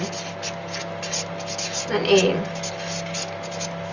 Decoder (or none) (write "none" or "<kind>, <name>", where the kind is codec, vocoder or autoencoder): none